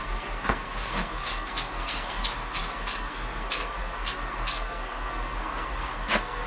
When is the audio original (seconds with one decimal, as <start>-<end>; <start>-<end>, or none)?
none